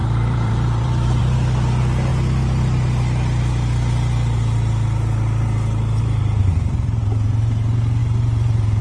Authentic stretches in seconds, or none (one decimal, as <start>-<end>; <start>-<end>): 2.1-6.0